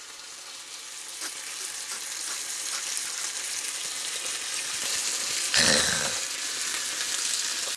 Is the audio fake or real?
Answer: real